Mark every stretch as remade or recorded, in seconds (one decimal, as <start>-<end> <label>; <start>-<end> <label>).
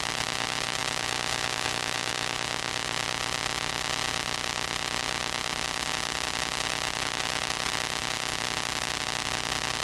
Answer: 0.0-9.8 recorded